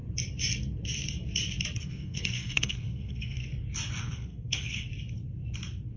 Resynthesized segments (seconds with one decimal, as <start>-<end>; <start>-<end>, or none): 1.8-3.4; 4.0-4.9